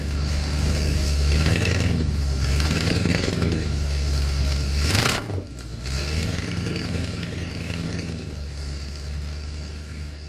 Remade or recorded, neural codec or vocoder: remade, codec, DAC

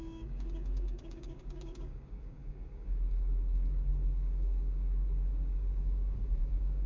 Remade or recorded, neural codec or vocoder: remade, codec, DAC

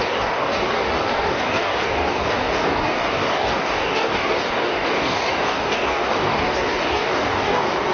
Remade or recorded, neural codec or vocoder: remade, codec, DAC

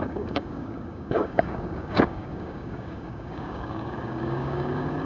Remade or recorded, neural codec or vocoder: remade, codec, DAC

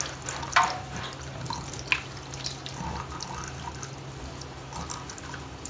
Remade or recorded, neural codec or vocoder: recorded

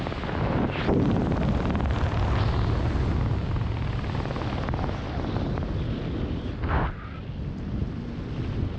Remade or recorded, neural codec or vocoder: recorded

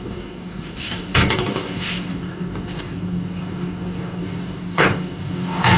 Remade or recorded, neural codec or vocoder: remade, codec, DAC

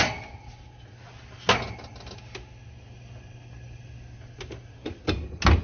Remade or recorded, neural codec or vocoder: recorded